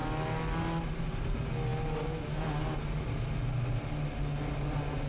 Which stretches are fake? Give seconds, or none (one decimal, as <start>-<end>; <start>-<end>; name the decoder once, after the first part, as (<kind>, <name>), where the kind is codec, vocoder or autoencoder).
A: none